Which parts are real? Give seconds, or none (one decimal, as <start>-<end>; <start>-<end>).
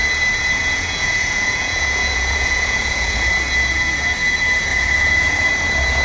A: 0.0-1.0; 3.3-4.7; 5.5-6.0